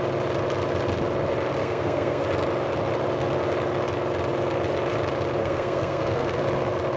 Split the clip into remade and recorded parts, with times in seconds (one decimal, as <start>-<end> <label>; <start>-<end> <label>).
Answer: 0.0-1.6 recorded; 1.6-2.2 remade; 2.2-5.4 recorded; 5.4-6.4 remade; 6.4-7.0 recorded